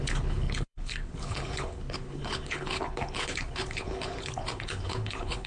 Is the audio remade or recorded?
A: remade